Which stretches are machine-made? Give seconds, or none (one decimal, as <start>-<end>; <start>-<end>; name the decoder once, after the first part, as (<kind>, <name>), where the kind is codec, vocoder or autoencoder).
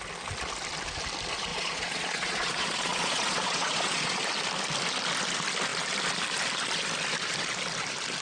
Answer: 1.5-4.2 (vocoder, Vocos)